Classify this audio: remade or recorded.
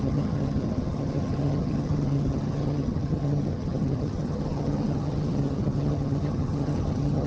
remade